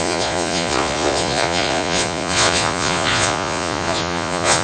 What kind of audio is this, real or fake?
fake